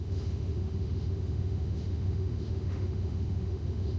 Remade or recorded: remade